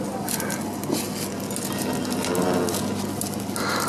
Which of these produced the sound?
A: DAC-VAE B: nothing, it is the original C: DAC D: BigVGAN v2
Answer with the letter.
B